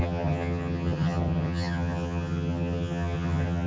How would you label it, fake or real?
fake